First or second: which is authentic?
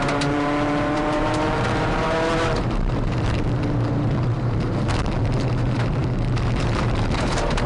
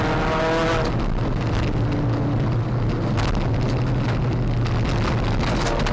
second